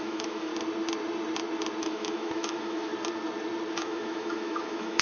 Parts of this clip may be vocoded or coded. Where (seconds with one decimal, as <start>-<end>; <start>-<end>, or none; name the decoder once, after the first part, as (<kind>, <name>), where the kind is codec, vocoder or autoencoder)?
0.0-0.5 (autoencoder, DAC-VAE); 1.8-2.9; 3.7-5.0